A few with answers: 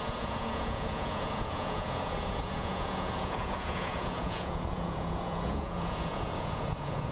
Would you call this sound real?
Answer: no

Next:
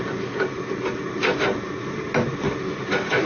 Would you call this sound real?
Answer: yes